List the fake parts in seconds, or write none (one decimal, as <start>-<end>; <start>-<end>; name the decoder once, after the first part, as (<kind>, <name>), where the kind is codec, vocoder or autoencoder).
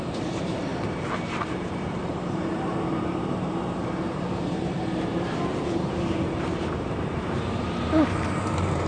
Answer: 0.0-0.7 (vocoder, BigVGAN v2); 1.5-8.9